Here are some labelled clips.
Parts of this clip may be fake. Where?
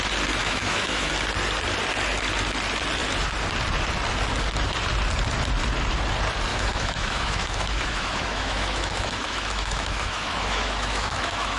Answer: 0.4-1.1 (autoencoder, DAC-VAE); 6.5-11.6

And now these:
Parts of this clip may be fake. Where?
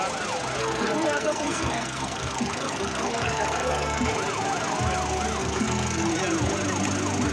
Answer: 0.6-4.1 (codec, SNAC); 5.4-6.1